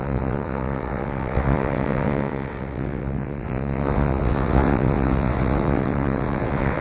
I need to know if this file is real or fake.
fake